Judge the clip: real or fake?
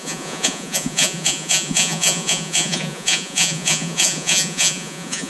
fake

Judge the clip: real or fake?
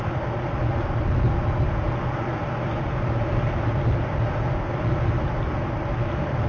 real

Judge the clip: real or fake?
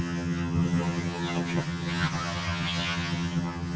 fake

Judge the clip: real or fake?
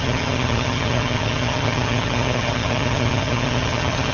fake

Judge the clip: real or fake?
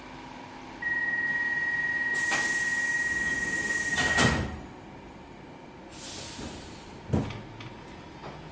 real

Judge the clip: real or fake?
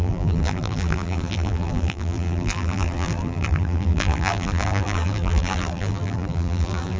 fake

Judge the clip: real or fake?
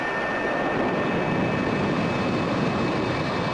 real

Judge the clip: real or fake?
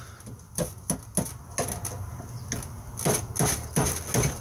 real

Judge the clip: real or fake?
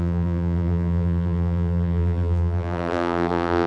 fake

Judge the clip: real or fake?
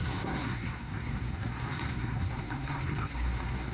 fake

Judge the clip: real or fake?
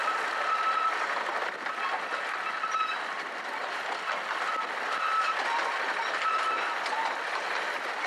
real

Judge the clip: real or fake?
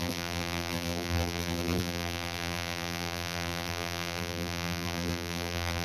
fake